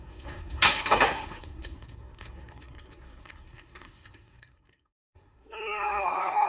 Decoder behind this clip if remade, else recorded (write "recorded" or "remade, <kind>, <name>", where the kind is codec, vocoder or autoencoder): remade, codec, SNAC